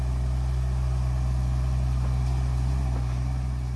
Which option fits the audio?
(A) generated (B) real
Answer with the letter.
B